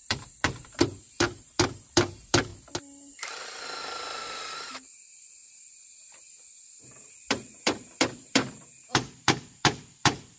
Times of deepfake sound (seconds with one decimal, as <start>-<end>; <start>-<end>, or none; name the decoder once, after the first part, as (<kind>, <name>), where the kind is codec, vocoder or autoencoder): 0.0-2.5 (vocoder, BigVGAN v2); 3.1-10.4